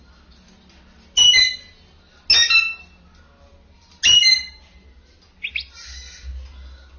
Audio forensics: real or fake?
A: real